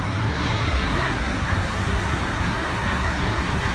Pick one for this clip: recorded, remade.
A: remade